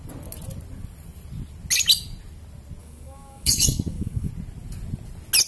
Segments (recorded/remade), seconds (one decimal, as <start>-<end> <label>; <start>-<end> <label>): 0.0-2.8 recorded; 2.8-4.3 remade; 4.3-5.5 recorded